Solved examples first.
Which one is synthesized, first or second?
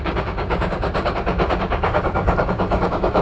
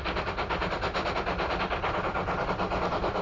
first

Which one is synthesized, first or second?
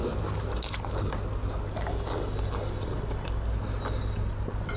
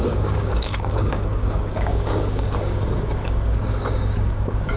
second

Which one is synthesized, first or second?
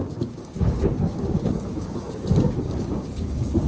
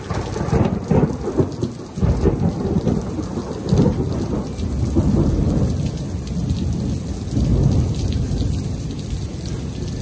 first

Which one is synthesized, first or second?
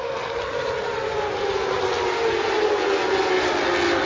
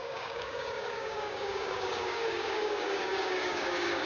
second